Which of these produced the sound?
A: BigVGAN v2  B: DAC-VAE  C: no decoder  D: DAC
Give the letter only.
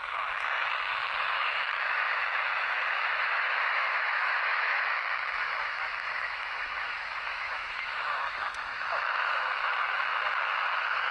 B